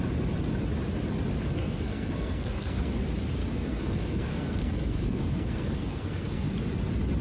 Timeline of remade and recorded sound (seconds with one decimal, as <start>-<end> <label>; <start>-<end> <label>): 0.0-1.6 recorded; 1.6-3.0 remade; 3.0-3.4 recorded; 3.4-6.5 remade; 6.5-7.2 recorded